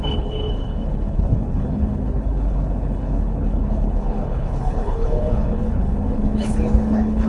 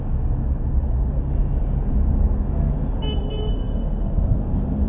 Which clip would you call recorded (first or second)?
second